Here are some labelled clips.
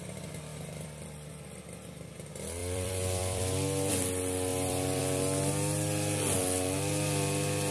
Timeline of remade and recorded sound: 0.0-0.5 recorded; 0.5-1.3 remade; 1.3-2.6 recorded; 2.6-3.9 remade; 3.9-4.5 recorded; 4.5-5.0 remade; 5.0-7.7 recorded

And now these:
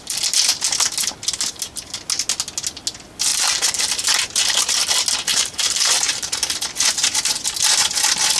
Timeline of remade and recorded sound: 0.0-3.3 recorded; 3.3-4.8 remade; 4.8-5.3 recorded; 5.3-6.4 remade; 6.4-8.4 recorded